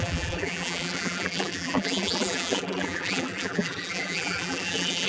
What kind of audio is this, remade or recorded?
remade